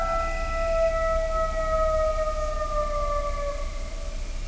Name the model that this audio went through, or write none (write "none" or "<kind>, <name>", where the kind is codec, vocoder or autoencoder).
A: none